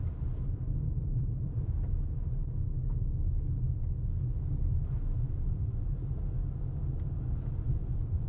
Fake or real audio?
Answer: real